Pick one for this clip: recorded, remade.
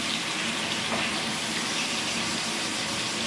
recorded